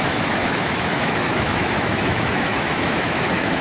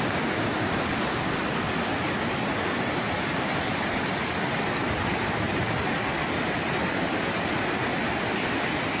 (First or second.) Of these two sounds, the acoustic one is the second